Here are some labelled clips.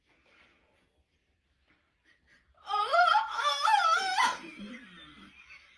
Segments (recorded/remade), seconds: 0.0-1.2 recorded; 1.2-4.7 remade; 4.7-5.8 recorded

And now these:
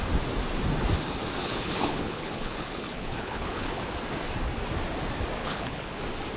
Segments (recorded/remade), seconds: 0.0-1.4 recorded; 1.4-3.9 remade; 3.9-5.4 recorded; 5.4-6.0 remade; 6.0-6.4 recorded

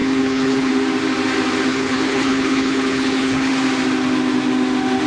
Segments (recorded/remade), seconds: 0.0-0.7 remade; 0.7-1.7 recorded; 1.7-3.5 remade; 3.5-5.1 recorded